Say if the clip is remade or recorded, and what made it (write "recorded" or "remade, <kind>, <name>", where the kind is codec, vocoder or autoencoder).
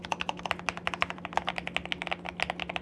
recorded